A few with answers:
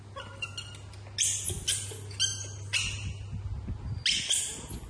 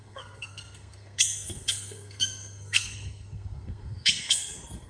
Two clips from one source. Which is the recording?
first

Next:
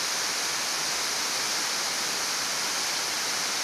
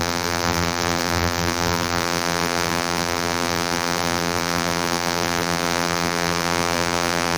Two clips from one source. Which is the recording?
first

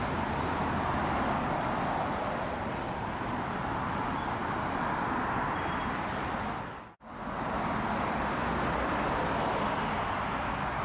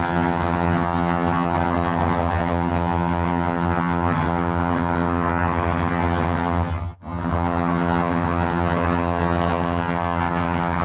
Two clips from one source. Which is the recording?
first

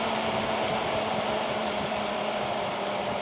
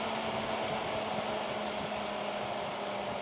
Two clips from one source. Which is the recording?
second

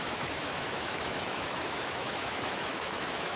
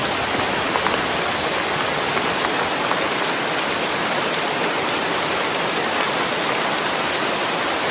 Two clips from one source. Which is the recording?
second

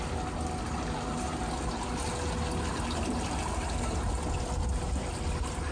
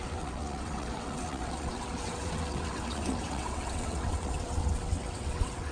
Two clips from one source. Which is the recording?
first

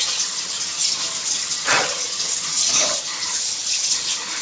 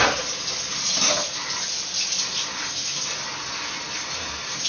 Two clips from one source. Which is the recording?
second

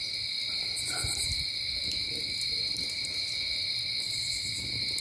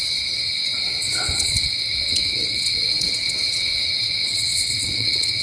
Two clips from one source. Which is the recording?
first